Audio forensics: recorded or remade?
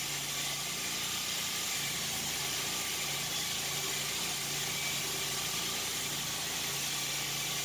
recorded